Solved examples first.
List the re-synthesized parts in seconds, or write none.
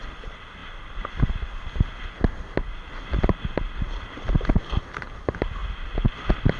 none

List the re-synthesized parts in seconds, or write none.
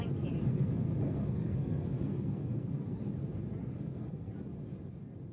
0.4-3.0 (codec, SNAC); 3.6-4.3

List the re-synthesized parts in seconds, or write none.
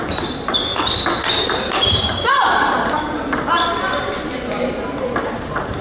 0.0-0.7 (vocoder, BigVGAN v2); 1.3-5.8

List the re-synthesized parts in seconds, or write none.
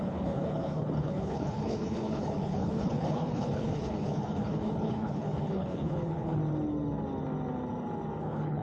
0.0-6.4 (codec, HILCodec); 8.2-8.6